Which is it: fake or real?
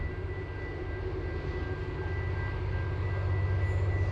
real